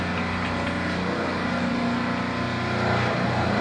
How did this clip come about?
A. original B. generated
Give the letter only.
A